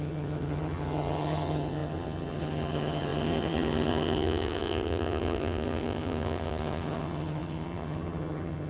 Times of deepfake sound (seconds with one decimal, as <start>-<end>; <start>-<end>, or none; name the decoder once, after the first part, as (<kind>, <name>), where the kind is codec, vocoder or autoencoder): 0.0-8.7 (vocoder, HiFi-GAN)

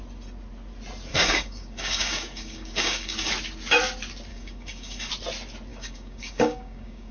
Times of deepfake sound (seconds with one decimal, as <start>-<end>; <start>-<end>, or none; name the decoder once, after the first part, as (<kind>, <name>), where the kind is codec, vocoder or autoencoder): 1.1-3.3 (codec, DAC); 4.3-5.1; 5.7-7.1